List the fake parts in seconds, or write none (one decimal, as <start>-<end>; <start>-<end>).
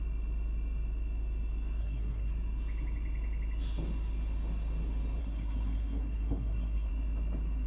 1.8-2.3; 5.2-6.9